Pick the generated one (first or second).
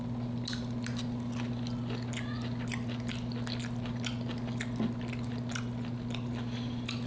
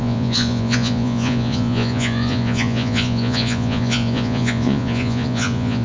second